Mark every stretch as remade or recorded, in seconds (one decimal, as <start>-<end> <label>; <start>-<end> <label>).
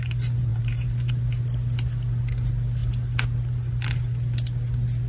0.0-0.5 recorded; 0.5-1.1 remade; 1.1-5.1 recorded